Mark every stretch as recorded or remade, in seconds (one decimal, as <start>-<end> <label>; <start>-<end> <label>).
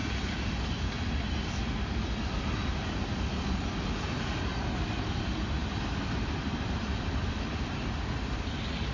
0.0-5.6 recorded; 5.6-7.3 remade; 7.3-8.9 recorded